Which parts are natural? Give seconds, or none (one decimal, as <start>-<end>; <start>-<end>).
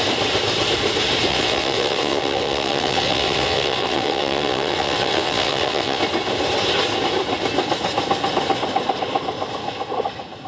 0.0-1.3; 6.0-10.5